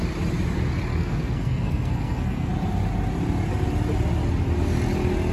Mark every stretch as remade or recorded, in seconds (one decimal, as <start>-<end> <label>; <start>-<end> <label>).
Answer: 0.0-0.9 recorded; 0.9-2.5 remade; 2.5-5.3 recorded